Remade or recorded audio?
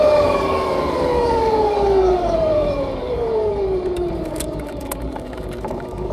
remade